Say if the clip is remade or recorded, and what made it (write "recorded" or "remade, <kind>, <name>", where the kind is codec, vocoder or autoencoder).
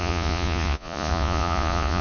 remade, vocoder, Vocos